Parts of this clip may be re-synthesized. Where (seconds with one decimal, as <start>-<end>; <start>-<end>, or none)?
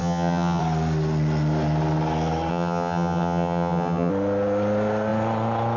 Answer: 0.0-0.6; 2.5-4.1